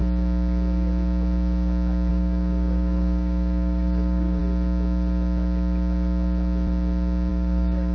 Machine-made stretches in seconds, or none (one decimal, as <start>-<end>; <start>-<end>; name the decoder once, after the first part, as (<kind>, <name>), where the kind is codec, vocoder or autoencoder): 2.1-4.4 (codec, DAC); 7.3-7.9